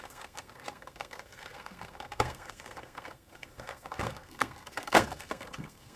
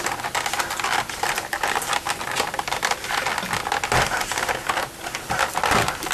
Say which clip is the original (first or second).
second